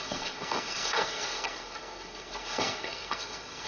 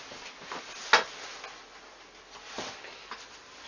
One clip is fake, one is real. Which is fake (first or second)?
first